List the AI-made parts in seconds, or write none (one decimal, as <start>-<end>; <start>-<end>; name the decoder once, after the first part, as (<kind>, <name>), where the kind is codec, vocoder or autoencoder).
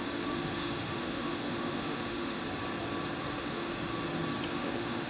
0.0-2.4 (autoencoder, DAC-VAE); 3.2-3.9; 4.5-5.1